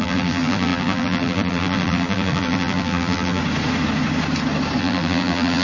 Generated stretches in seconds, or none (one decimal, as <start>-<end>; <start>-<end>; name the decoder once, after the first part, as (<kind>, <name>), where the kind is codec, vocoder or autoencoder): 0.0-3.4 (vocoder, BigVGAN v2); 4.8-5.6